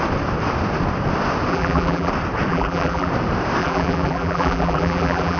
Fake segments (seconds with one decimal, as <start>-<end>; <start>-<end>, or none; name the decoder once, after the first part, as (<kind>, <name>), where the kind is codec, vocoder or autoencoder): 1.5-2.1 (vocoder, BigVGAN v2); 2.5-3.1; 3.6-5.4